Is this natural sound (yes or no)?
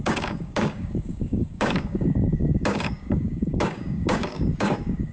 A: no